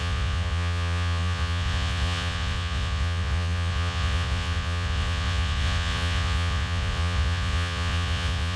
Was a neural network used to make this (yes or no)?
yes